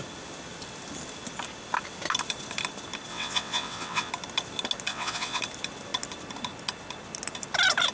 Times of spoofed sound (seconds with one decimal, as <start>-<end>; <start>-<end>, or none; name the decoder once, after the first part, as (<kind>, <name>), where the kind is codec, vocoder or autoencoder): 3.1-4.1 (vocoder, WaveNeXt); 4.9-5.4